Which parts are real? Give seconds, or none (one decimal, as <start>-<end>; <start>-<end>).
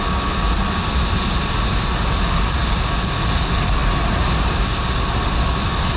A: 0.0-6.0